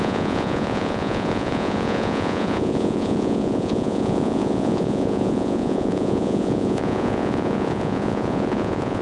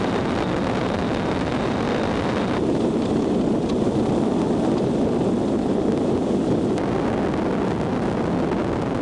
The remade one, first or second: first